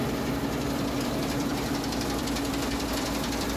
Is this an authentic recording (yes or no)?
no